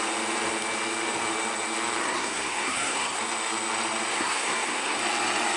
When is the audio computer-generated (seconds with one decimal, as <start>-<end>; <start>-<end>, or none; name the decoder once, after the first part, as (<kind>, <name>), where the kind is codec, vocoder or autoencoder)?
2.0-3.2 (codec, SNAC); 4.1-5.0